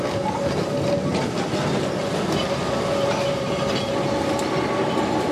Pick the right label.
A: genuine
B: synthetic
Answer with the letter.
A